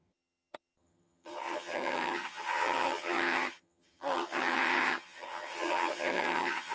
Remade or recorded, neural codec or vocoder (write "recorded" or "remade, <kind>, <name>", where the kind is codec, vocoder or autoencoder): remade, vocoder, HiFi-GAN